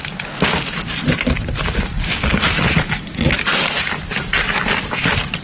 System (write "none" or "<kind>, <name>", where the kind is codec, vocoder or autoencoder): none